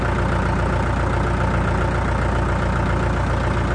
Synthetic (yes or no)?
no